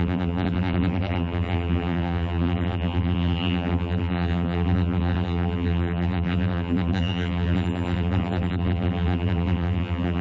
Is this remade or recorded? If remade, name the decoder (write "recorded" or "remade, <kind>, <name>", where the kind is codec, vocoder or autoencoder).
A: remade, vocoder, BigVGAN v2